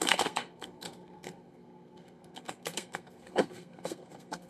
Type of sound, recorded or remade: remade